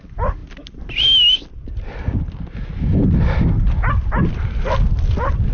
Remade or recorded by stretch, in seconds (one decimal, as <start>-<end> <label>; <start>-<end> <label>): 0.0-5.5 recorded